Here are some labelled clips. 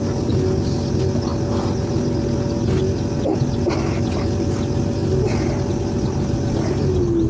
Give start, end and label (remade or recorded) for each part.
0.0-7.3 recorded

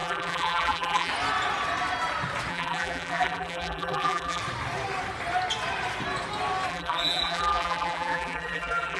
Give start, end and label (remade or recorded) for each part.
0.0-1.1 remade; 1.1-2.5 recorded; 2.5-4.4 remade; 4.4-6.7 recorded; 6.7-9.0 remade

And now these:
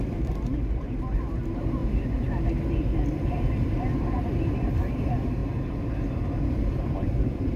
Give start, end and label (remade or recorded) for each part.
0.0-1.8 remade; 1.8-3.1 recorded; 3.1-5.4 remade; 5.4-6.7 recorded; 6.7-7.6 remade